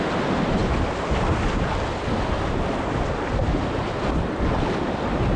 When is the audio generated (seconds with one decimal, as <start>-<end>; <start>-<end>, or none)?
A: none